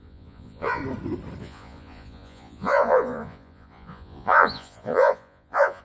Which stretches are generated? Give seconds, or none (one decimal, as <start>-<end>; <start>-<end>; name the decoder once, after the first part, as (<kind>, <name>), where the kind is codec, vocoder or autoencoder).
0.0-0.8 (vocoder, Vocos); 1.4-5.8